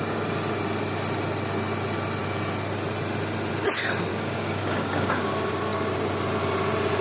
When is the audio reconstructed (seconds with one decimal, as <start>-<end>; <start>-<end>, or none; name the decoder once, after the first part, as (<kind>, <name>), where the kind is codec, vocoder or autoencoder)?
4.1-5.3 (codec, DAC)